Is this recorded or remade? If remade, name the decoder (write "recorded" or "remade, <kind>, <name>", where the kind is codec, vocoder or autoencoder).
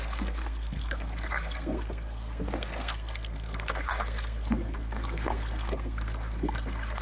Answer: remade, codec, SNAC